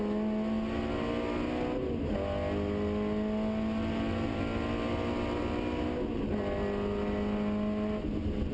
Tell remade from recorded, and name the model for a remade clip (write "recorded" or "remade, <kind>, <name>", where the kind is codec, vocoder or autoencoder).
recorded